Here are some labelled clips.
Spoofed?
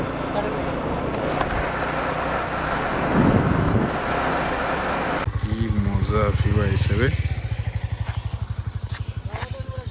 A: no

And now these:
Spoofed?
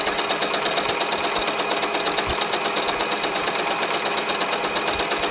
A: no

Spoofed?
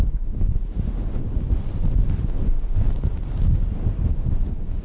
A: no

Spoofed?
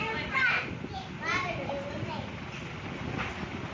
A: no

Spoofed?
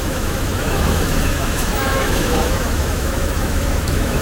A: yes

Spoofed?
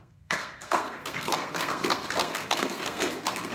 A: yes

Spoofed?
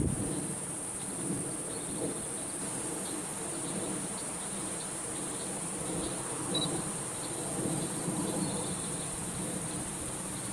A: yes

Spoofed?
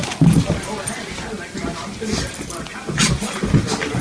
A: no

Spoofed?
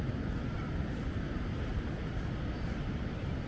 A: no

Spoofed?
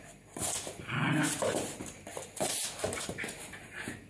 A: no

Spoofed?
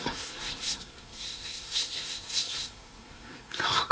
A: yes